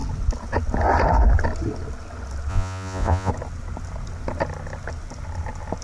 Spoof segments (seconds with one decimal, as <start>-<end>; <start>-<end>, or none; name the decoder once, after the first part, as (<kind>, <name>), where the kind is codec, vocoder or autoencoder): 2.5-3.3 (vocoder, Vocos)